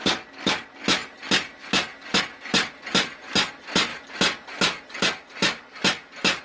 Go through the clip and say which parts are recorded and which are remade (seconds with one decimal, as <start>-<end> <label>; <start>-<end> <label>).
0.0-6.4 recorded